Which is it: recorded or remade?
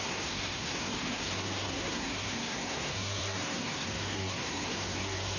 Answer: remade